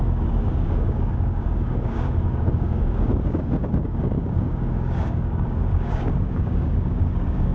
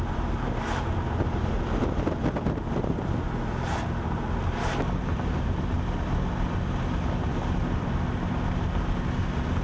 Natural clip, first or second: second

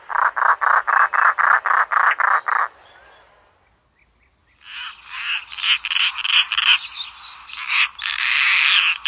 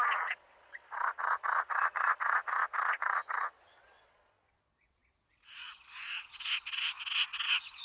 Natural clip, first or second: first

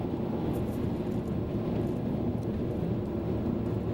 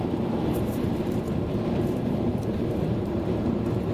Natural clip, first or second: first